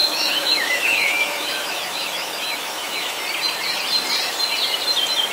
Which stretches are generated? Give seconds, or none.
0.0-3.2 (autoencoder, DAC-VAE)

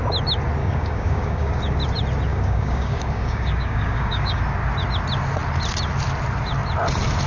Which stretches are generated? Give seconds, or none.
0.6-1.6 (codec, DAC); 2.3-4.4

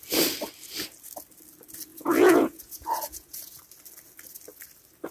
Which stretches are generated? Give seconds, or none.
1.9-3.6 (vocoder, Vocos)